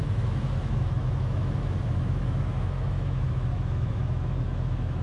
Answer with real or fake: fake